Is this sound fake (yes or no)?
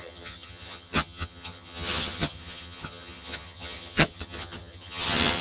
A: yes